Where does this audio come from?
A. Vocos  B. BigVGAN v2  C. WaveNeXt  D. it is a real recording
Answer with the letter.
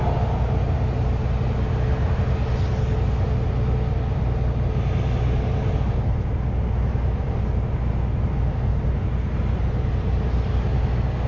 D